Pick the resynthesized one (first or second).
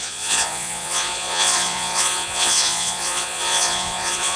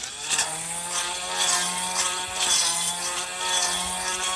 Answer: first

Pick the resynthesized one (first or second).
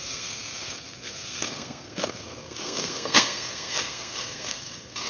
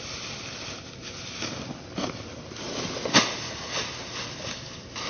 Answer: first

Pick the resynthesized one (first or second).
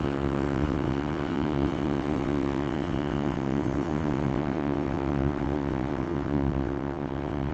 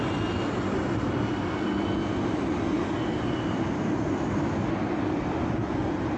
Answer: first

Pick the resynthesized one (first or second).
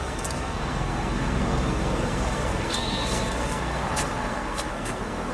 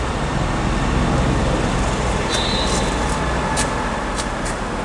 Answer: first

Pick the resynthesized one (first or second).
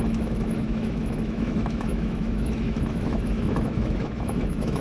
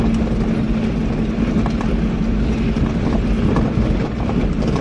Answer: first